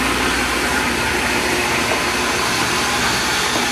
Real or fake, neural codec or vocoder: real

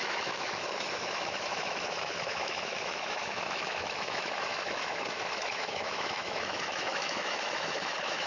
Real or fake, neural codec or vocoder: fake, autoencoder, DAC-VAE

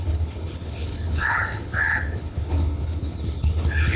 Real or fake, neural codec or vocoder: fake, codec, HILCodec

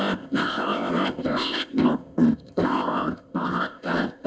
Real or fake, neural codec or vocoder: fake, codec, ZipCodec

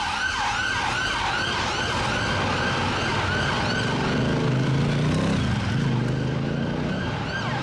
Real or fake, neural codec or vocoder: real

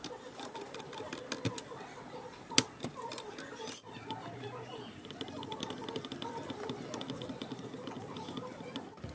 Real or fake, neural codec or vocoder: real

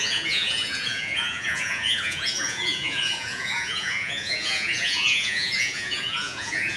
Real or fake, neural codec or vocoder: fake, vocoder, Vocos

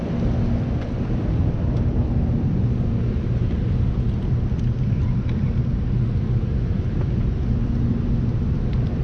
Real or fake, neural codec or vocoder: real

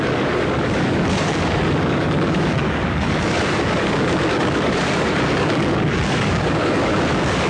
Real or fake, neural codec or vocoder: fake, codec, DAC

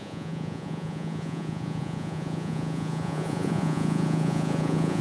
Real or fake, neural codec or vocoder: fake, vocoder, Vocos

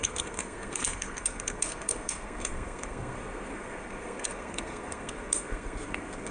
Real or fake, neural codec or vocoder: fake, codec, SNAC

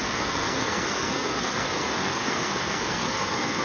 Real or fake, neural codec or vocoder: fake, codec, SNAC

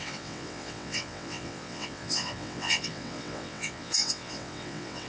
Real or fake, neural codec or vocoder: fake, vocoder, WaveNeXt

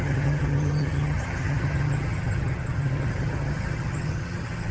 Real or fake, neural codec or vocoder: fake, vocoder, HiFi-GAN